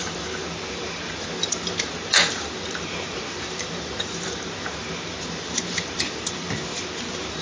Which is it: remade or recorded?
remade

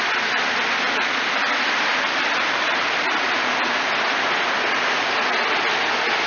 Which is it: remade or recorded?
recorded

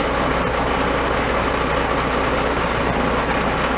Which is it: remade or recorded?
recorded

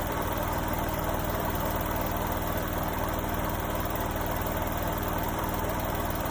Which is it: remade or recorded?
remade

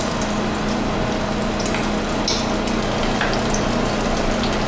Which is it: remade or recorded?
recorded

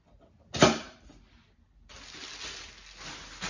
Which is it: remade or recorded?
recorded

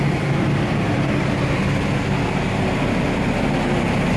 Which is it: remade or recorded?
recorded